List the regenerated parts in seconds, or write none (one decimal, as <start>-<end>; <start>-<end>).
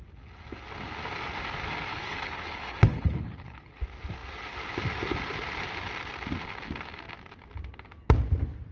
1.9-3.8